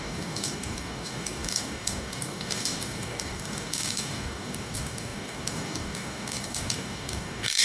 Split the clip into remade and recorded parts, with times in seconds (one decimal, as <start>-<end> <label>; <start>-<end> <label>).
0.0-7.6 remade